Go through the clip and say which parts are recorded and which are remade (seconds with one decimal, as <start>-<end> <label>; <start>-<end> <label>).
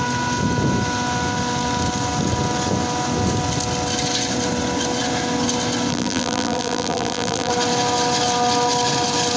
0.0-5.9 recorded; 5.9-7.5 remade; 7.5-9.4 recorded